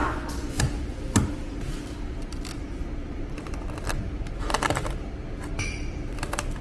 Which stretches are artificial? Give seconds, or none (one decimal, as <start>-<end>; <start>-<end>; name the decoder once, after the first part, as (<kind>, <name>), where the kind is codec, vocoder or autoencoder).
0.0-0.6 (vocoder, Vocos)